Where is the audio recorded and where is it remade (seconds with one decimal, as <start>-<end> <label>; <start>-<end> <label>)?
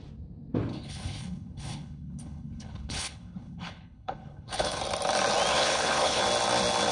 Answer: 0.0-0.7 recorded; 0.7-4.8 remade; 4.8-5.5 recorded; 5.5-6.2 remade; 6.2-6.9 recorded